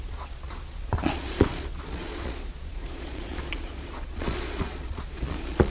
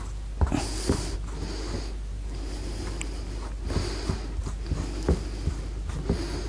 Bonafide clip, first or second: second